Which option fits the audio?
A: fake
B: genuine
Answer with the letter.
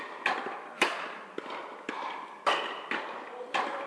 B